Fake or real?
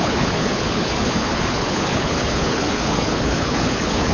fake